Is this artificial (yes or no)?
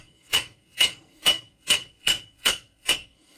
yes